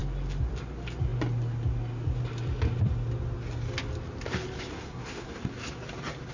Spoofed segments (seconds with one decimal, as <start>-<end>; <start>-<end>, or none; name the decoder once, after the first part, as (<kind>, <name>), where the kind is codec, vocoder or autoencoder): 4.7-5.4 (codec, SNAC)